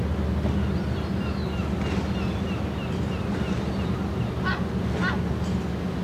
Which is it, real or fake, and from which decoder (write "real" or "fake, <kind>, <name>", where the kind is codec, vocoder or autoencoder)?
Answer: real